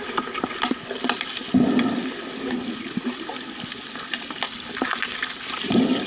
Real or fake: real